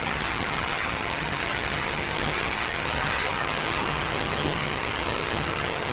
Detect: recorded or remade remade